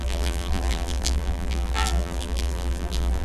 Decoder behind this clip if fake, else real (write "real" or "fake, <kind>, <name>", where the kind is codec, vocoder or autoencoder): fake, vocoder, BigVGAN v2